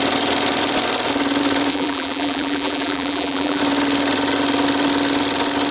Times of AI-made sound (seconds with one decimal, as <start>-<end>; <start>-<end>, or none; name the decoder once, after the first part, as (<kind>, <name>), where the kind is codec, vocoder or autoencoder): 1.7-3.6 (vocoder, BigVGAN v2)